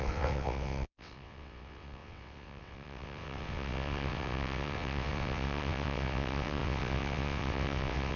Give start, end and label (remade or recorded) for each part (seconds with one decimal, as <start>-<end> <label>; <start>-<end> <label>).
0.0-8.2 remade